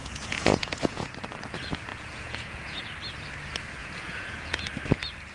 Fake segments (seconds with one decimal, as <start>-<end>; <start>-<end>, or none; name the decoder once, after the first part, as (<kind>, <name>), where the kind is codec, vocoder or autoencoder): 0.0-1.1 (vocoder, Vocos); 1.9-2.8; 3.8-4.6